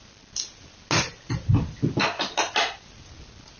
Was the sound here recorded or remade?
recorded